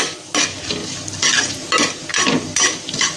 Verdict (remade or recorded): recorded